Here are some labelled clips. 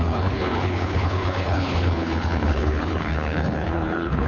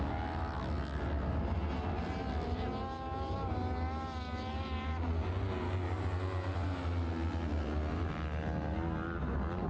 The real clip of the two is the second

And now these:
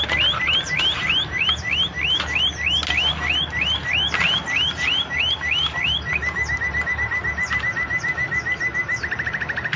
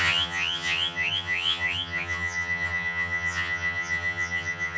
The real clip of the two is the first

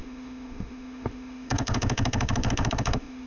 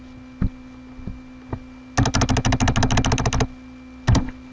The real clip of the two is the second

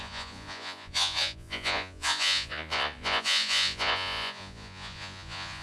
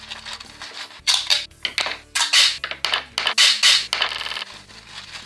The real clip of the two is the second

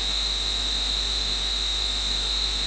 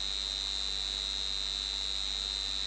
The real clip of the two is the second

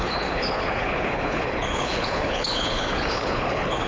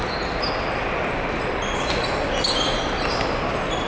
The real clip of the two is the second